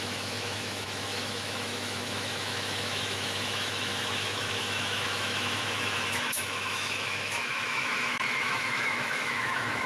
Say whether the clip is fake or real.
fake